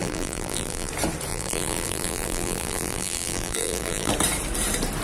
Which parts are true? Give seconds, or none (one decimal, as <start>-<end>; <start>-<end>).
0.9-1.3; 4.1-5.0